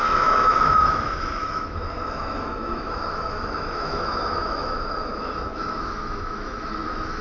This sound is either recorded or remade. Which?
remade